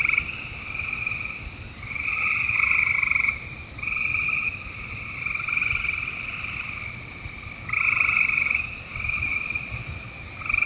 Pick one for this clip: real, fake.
fake